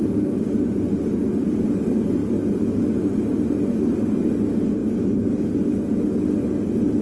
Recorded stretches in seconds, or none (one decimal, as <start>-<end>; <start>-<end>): 0.0-7.0